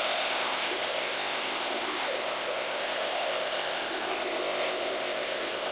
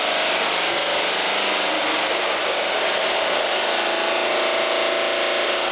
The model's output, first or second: first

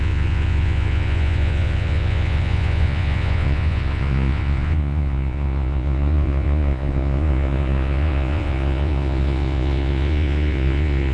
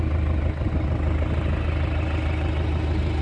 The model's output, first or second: first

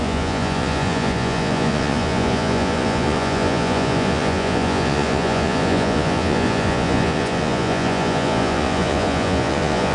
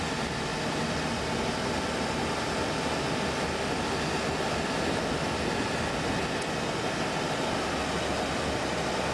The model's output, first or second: first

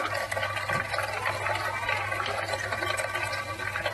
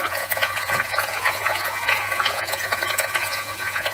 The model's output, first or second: second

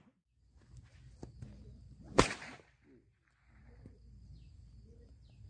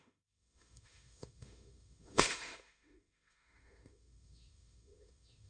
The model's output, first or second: second